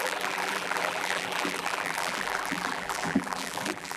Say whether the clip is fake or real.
fake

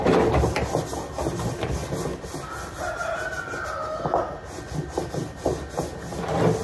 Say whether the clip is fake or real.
real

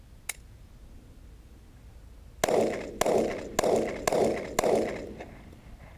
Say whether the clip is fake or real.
real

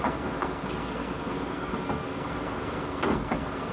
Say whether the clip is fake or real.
fake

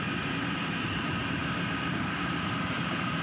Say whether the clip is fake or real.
fake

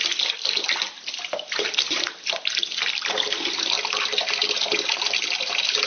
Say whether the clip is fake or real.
real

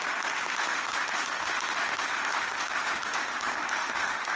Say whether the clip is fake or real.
fake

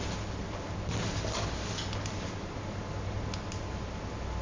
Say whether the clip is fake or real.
real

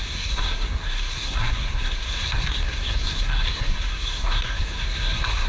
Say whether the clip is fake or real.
fake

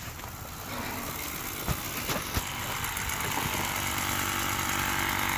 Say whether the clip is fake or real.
real